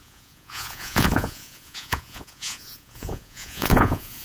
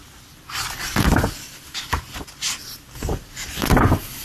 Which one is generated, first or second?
first